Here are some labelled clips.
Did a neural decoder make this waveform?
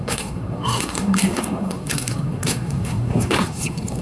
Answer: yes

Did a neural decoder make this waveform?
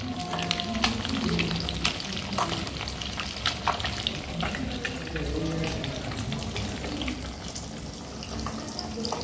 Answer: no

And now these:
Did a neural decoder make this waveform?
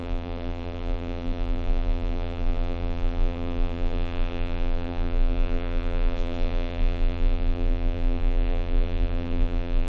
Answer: yes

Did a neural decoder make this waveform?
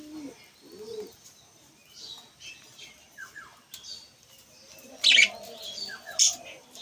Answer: no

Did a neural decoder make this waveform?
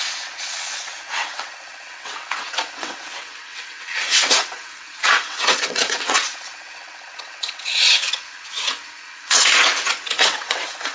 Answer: yes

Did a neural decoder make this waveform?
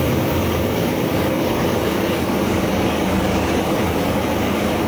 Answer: yes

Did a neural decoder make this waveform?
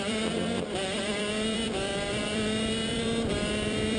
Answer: yes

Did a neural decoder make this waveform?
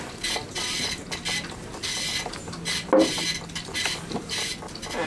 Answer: no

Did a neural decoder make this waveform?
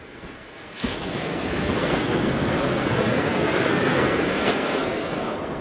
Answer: yes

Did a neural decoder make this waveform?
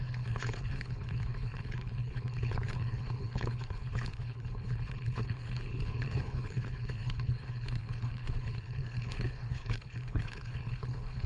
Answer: yes